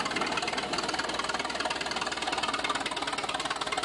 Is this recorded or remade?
recorded